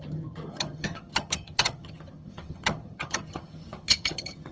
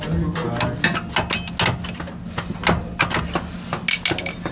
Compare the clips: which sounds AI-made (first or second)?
first